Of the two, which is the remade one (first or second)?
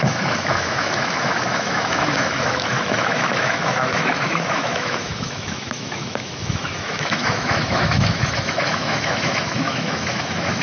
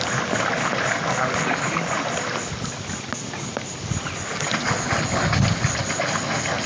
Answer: first